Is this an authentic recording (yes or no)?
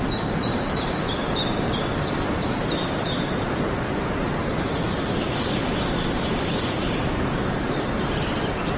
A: no